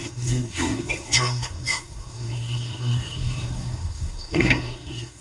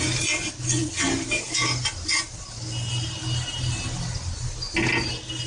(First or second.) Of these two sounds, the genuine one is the second